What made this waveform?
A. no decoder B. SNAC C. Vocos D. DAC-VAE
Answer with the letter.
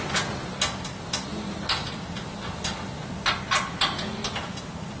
A